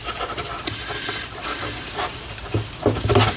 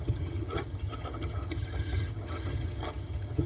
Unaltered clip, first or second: first